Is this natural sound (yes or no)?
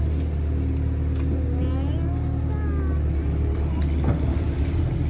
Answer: yes